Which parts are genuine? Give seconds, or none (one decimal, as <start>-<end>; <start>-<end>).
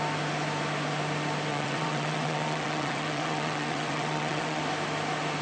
0.0-1.5; 4.6-5.4